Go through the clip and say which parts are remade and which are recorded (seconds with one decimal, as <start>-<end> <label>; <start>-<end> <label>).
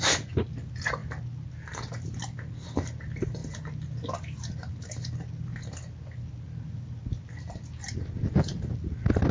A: 0.0-9.3 recorded